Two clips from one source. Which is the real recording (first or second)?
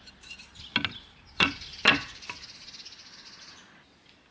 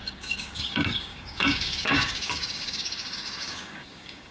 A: first